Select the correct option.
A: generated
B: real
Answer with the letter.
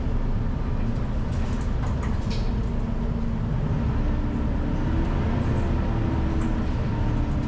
B